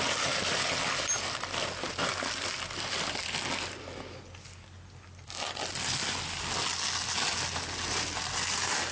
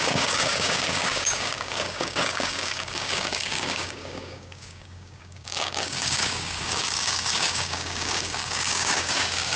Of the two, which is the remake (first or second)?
second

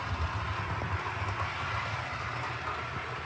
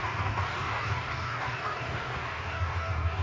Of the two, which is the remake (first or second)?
second